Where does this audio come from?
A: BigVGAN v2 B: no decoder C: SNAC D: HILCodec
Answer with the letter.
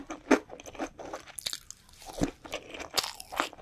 B